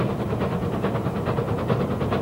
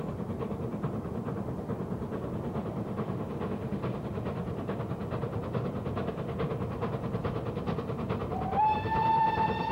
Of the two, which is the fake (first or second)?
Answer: second